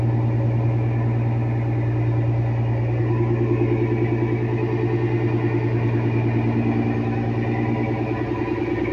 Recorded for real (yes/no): yes